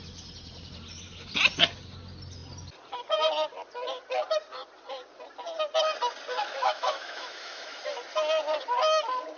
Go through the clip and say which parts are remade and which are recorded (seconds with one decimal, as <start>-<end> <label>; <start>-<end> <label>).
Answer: 0.0-6.4 recorded; 6.4-7.8 remade; 7.8-9.4 recorded